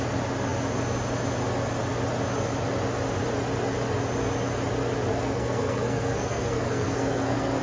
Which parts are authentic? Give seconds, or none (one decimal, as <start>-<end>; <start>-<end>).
0.0-5.1